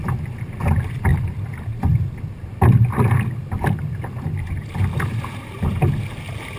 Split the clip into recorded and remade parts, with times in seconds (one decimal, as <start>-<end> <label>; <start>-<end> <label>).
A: 0.0-6.6 recorded